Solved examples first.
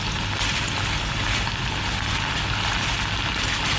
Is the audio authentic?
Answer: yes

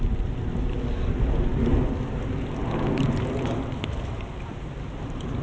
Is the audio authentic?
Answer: yes